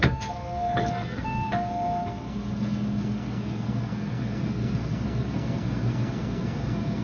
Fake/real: fake